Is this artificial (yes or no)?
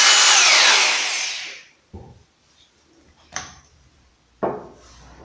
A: no